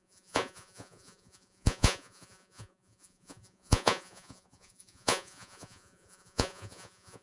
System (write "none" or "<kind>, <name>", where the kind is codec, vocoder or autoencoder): vocoder, Vocos